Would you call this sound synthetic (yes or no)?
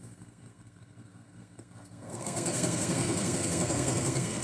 yes